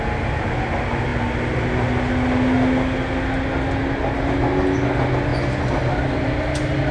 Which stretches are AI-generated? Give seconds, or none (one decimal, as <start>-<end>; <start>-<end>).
none